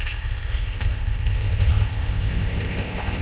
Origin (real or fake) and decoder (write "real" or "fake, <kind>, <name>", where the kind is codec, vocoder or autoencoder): fake, codec, ZipCodec